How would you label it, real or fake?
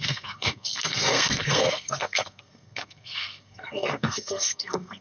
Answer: fake